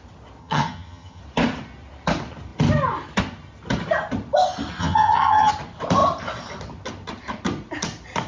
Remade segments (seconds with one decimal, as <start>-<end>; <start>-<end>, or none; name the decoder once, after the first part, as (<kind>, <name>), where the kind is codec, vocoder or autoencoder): 0.4-1.2 (vocoder, HiFi-GAN); 4.8-5.5